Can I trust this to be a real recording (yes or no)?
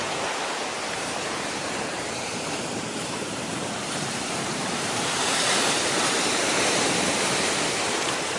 no